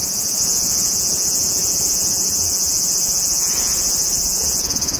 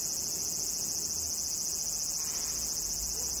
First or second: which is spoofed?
first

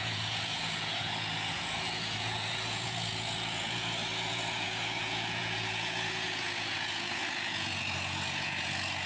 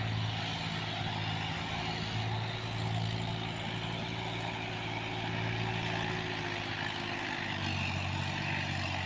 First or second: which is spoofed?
first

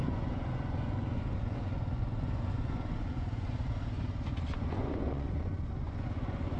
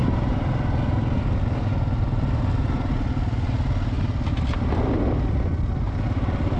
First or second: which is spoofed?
first